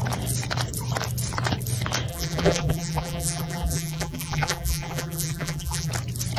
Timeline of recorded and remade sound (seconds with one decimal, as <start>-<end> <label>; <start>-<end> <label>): 0.0-2.1 recorded; 2.1-5.9 remade; 5.9-6.4 recorded